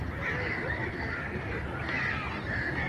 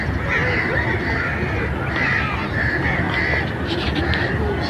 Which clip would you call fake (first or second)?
first